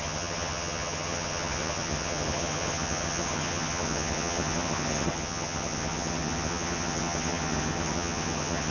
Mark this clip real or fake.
fake